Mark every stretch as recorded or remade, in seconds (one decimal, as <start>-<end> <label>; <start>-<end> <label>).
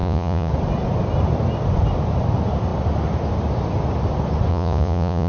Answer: 0.0-0.5 remade; 0.5-4.5 recorded; 4.5-5.3 remade